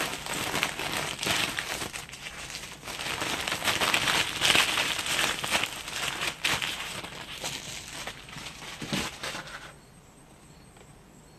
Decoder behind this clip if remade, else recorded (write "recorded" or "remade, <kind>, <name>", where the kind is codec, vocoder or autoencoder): recorded